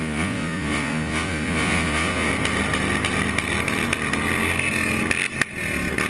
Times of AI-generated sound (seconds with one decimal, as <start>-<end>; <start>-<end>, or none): 0.0-2.3